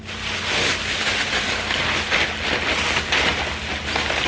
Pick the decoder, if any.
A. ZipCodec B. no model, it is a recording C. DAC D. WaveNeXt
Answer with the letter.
B